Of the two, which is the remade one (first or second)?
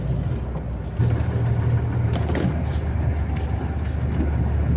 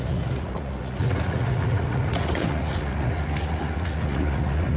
second